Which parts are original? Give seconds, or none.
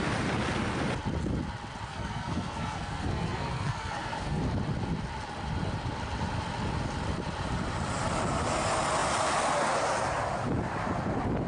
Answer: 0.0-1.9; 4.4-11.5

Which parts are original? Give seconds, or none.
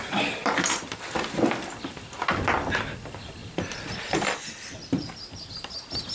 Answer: 0.0-6.1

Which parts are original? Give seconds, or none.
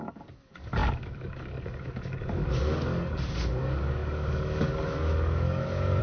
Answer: none